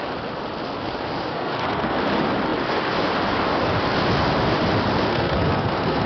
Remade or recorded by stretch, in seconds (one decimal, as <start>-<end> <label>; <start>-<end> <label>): 0.0-1.3 recorded; 1.3-2.0 remade; 2.0-5.1 recorded; 5.1-6.1 remade